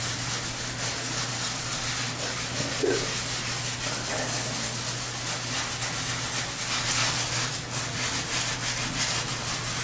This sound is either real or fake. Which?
real